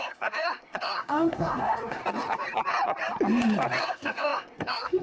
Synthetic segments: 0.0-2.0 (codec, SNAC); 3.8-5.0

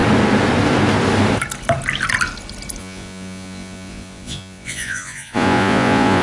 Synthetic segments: 2.8-6.2 (vocoder, Vocos)

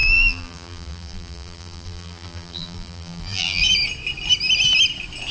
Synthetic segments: 0.0-3.6 (vocoder, BigVGAN v2)

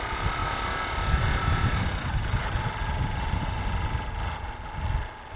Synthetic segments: none

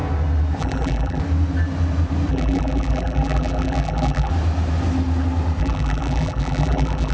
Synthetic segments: 0.6-1.2 (vocoder, BigVGAN v2); 2.3-4.3; 5.6-7.1

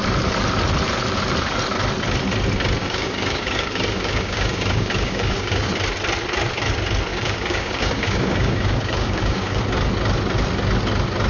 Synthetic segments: 2.8-5.7 (codec, DAC); 7.1-9.6